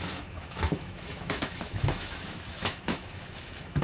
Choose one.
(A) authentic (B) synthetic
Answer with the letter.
B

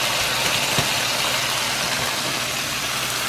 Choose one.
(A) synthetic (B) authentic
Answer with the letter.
B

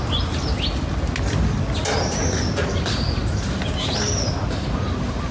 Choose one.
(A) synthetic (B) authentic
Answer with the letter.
B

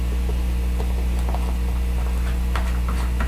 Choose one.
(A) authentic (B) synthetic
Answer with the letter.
A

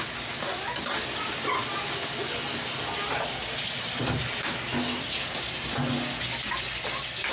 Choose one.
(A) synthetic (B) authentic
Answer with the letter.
B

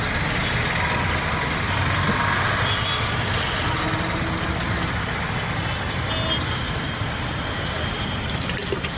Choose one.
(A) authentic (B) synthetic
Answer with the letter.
A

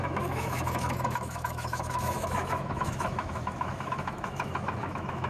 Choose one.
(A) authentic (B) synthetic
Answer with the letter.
B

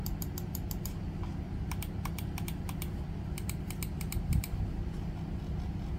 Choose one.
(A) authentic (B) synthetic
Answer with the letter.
A